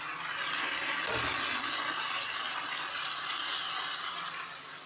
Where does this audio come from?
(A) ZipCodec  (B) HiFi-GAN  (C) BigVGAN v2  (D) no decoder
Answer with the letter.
D